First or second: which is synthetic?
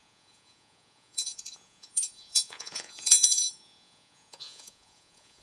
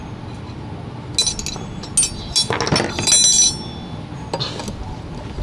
first